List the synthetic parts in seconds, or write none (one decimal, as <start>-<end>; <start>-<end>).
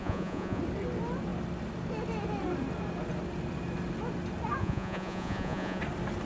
0.0-0.6; 4.6-5.8